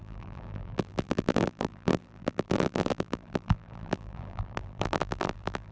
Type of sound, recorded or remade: remade